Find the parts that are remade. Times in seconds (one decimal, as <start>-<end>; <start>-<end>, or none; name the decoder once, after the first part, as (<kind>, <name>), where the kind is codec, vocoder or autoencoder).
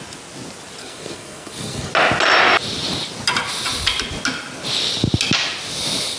0.8-1.9 (codec, SNAC)